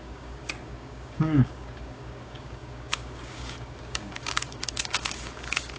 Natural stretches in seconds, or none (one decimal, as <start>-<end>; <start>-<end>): none